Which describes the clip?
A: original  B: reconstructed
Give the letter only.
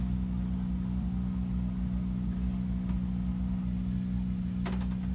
A